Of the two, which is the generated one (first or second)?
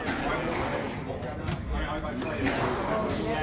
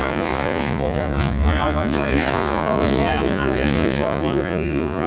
second